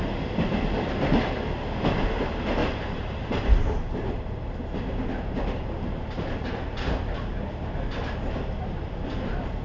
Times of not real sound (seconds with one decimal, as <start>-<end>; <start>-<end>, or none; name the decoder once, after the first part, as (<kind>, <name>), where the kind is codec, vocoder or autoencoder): 2.6-4.3 (vocoder, BigVGAN v2)